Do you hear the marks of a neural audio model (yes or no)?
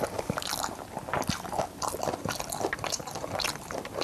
no